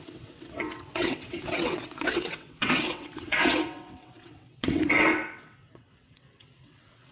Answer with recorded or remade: remade